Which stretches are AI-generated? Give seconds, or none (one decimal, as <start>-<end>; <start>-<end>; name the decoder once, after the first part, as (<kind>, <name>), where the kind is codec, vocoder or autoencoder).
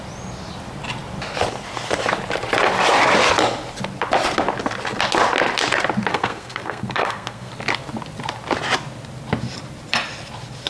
6.1-7.5 (codec, SNAC)